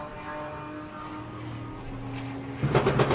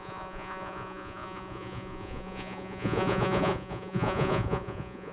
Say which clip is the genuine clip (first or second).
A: first